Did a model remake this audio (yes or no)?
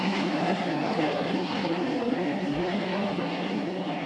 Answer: yes